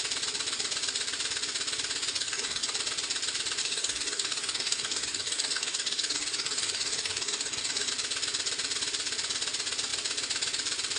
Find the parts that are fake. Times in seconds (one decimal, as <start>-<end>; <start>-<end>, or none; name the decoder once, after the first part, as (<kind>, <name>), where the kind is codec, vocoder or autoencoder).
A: 2.1-2.7 (codec, DAC); 3.6-7.9